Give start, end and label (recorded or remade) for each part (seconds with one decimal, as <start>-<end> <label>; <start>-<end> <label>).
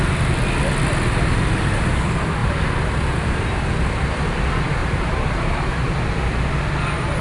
0.0-2.4 recorded; 2.4-3.7 remade; 3.7-4.8 recorded; 4.8-5.9 remade; 5.9-7.2 recorded